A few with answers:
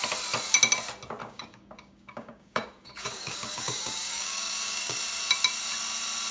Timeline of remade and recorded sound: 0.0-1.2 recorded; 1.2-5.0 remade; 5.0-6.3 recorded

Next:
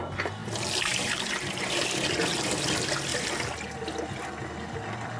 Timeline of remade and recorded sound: 0.0-5.2 recorded

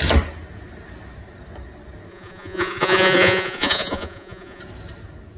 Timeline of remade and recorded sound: 0.0-2.1 recorded; 2.1-4.6 remade; 4.6-5.4 recorded

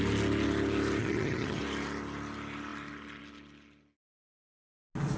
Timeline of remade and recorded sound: 0.0-1.0 recorded; 1.0-1.6 remade; 1.6-5.2 recorded

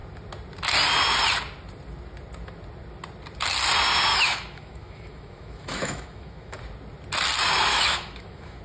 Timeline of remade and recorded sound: 0.0-4.1 recorded; 4.1-6.6 remade; 6.6-7.7 recorded; 7.7-8.6 remade

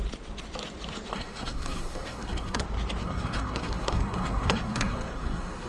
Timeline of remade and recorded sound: 0.0-1.1 recorded; 1.1-2.6 remade; 2.6-3.0 recorded; 3.0-5.7 remade

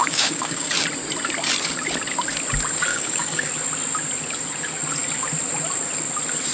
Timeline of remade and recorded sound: 0.0-0.7 remade; 0.7-2.9 recorded; 2.9-3.5 remade; 3.5-6.5 recorded

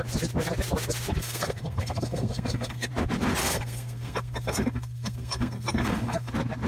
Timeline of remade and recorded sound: 0.0-1.2 recorded; 1.2-2.9 remade; 2.9-3.4 recorded; 3.4-6.3 remade; 6.3-6.7 recorded